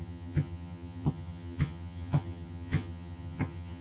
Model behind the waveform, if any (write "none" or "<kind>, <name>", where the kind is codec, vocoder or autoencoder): vocoder, HiFi-GAN